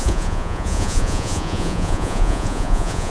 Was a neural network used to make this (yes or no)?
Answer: yes